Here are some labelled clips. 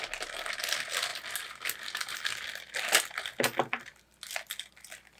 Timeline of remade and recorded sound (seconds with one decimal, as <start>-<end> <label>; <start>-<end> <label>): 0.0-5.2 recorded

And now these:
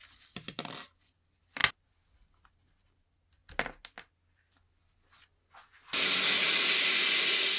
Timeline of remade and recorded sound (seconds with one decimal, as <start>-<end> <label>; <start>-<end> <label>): 0.0-7.6 recorded

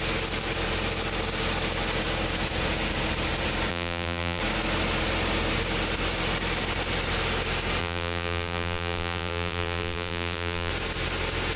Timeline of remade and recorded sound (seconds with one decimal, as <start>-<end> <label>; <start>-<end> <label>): 0.0-3.7 recorded; 3.7-4.4 remade; 4.4-7.8 recorded; 7.8-10.7 remade; 10.7-11.6 recorded

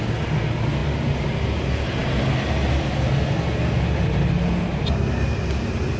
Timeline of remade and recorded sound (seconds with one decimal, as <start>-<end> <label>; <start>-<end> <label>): 0.0-6.0 recorded

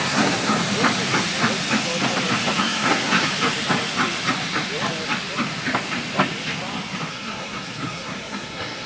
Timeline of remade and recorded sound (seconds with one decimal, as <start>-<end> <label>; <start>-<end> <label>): 0.0-0.6 remade; 0.6-2.6 recorded; 2.6-3.3 remade; 3.3-7.1 recorded; 7.1-8.9 remade

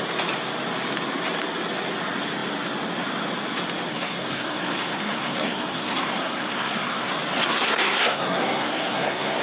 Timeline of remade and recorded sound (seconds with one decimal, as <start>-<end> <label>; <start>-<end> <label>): 0.0-3.9 recorded; 3.9-7.1 remade; 7.1-7.5 recorded; 7.5-9.4 remade